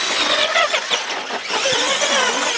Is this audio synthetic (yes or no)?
yes